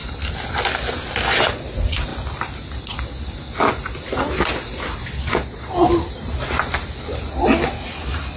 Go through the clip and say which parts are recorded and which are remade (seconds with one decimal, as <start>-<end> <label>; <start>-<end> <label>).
0.0-5.0 recorded; 5.0-5.7 remade; 5.7-8.4 recorded